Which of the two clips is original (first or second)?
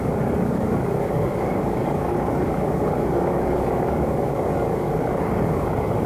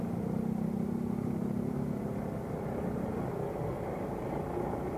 second